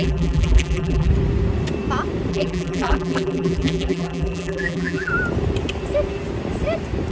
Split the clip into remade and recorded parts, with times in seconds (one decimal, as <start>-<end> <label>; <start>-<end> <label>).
0.0-1.1 remade; 1.1-2.3 recorded; 2.3-5.1 remade; 5.1-7.1 recorded